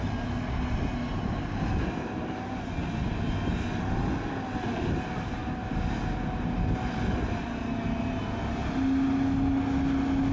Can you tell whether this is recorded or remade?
recorded